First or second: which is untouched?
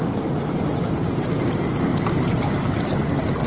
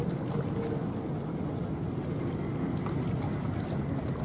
second